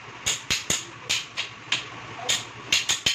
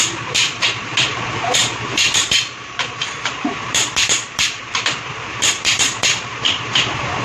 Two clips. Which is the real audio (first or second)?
first